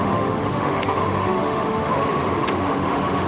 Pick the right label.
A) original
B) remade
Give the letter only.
B